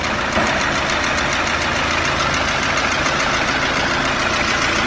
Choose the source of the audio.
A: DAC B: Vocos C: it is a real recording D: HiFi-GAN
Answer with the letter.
C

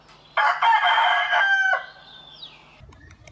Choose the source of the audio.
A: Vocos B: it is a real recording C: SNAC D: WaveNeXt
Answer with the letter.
B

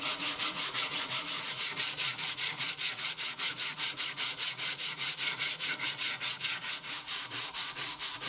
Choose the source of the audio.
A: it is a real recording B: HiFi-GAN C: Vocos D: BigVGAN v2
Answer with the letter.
C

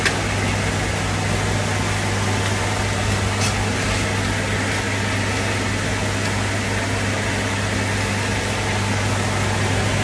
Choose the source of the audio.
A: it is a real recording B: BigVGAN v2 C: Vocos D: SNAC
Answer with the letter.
A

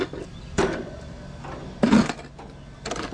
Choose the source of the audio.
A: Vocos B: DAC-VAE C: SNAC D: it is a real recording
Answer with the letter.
D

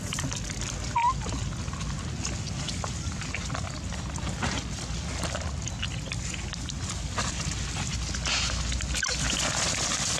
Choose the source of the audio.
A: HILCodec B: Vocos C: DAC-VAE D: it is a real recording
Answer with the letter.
D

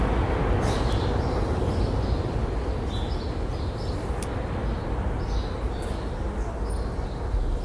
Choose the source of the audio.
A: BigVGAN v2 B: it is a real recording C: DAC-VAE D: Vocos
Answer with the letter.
B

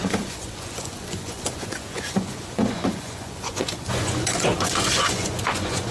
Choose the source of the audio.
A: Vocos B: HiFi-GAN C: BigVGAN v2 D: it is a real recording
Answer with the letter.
A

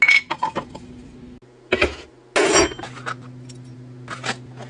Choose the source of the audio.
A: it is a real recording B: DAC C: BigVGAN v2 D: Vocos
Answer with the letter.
A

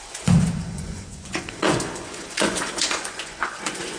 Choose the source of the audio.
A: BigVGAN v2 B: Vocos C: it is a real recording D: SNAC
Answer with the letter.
B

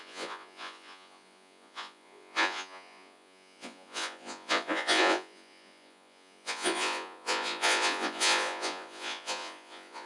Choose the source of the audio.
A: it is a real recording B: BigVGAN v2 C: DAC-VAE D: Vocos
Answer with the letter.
D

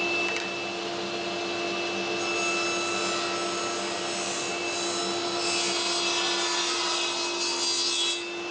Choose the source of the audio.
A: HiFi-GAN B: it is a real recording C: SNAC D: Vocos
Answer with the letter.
B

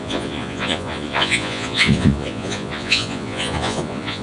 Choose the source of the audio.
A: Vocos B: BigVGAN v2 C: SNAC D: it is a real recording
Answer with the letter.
A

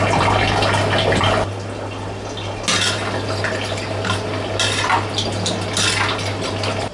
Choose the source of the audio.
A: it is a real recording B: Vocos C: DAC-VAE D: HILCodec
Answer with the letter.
A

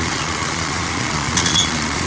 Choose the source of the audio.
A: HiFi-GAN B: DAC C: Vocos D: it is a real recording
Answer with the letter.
C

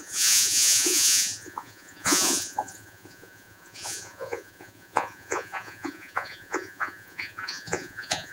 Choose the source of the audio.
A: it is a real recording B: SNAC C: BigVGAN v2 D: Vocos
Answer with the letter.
D